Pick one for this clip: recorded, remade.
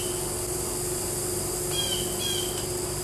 recorded